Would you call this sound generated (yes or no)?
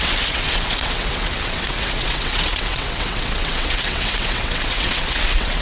yes